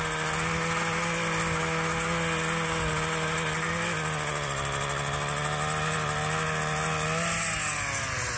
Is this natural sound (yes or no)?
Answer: yes